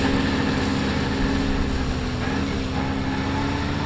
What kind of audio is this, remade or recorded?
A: recorded